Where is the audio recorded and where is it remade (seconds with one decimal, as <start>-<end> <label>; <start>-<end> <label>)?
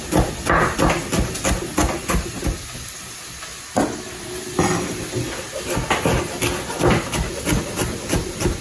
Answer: 0.0-8.6 recorded